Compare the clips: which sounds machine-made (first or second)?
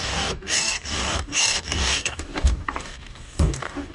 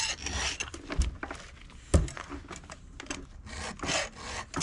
first